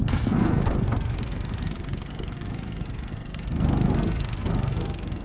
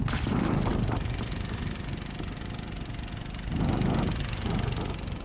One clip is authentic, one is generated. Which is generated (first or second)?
first